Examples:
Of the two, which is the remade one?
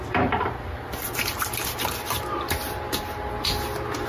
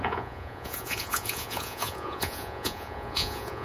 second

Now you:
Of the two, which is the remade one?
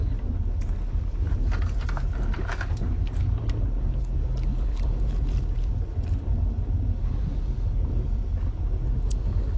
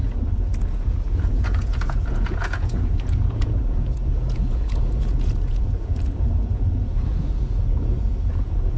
second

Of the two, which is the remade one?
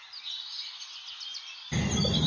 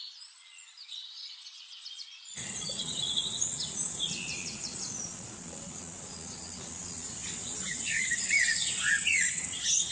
second